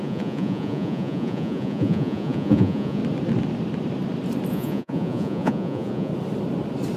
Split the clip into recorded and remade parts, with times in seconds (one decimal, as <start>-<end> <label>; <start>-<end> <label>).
0.0-3.0 remade; 3.0-4.5 recorded; 4.5-6.1 remade; 6.1-7.0 recorded